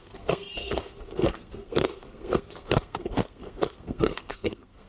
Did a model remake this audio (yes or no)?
yes